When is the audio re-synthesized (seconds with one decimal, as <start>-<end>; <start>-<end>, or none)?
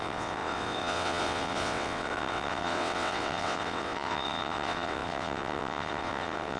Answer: 0.0-6.6